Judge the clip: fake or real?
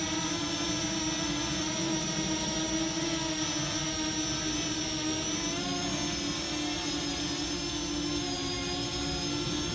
real